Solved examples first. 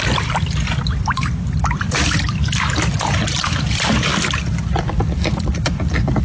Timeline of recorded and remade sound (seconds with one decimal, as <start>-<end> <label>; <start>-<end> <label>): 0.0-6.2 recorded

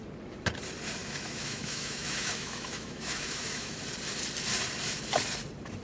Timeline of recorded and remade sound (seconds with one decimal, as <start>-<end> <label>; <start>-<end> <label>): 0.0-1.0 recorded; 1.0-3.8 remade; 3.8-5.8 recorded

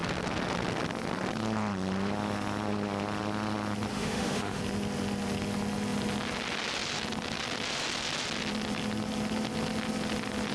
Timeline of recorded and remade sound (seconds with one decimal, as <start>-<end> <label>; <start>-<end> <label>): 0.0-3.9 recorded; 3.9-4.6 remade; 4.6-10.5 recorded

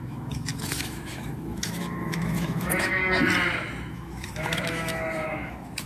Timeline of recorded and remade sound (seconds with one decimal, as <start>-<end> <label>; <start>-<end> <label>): 0.0-3.0 remade; 3.0-3.9 recorded; 3.9-5.9 remade